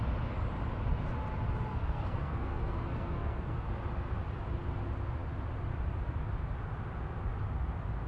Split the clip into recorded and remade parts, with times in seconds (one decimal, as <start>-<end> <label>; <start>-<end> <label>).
0.0-1.7 recorded; 1.7-3.7 remade; 3.7-8.1 recorded